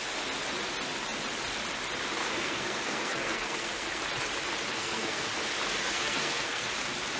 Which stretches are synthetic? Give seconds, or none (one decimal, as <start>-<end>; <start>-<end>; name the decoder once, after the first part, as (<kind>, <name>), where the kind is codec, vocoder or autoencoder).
2.2-4.0 (codec, SNAC); 4.7-5.3; 5.8-6.7